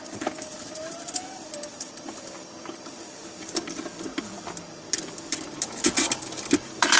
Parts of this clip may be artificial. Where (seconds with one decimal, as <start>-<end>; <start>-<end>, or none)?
0.0-3.9; 6.6-7.0